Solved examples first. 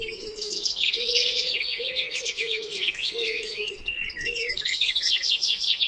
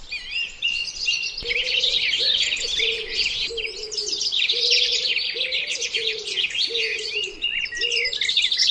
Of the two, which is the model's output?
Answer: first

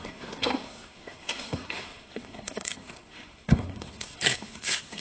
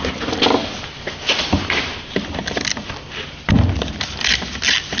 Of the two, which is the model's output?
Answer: first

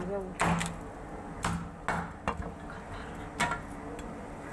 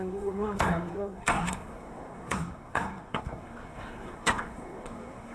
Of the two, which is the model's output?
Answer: second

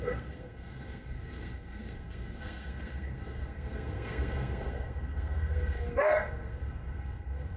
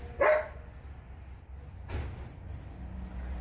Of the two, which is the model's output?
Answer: first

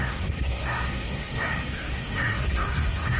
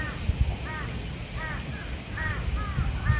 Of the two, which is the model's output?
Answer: first